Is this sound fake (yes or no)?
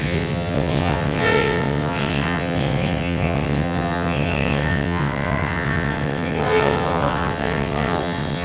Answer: yes